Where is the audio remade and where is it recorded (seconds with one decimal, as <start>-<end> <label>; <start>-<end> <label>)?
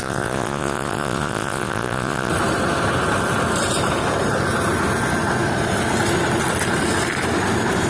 0.0-2.3 remade; 2.3-7.9 recorded